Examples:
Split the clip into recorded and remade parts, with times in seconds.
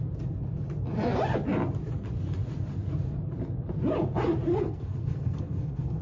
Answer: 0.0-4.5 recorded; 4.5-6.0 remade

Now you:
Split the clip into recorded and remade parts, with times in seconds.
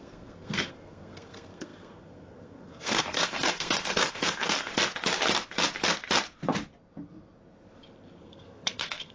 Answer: 0.0-4.7 remade; 4.7-8.2 recorded; 8.2-9.1 remade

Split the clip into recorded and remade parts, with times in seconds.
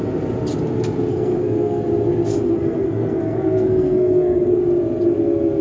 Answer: 0.0-1.1 recorded; 1.1-1.8 remade; 1.8-2.3 recorded; 2.3-4.6 remade; 4.6-5.6 recorded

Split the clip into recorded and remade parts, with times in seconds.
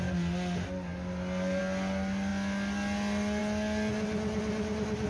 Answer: 0.0-5.1 recorded